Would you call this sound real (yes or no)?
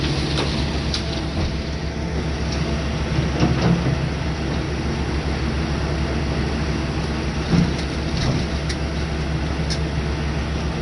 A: yes